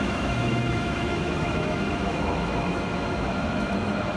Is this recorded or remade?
remade